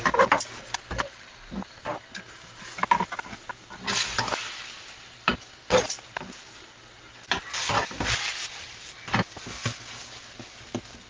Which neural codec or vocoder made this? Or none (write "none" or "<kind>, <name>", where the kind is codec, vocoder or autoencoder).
none